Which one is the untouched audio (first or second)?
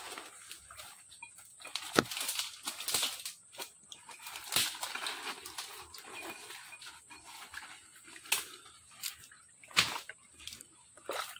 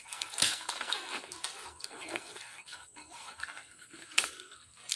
first